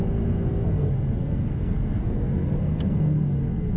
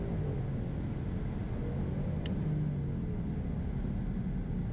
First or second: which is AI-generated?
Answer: first